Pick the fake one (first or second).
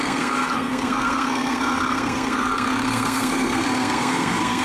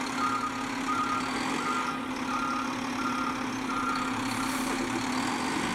first